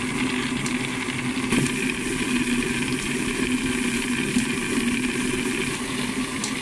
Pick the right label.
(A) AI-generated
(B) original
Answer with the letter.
B